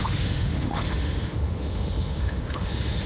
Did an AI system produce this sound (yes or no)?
yes